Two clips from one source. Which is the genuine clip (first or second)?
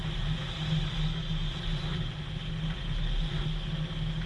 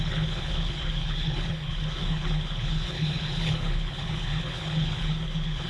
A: first